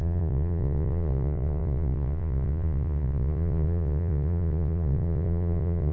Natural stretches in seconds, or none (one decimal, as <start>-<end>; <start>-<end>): none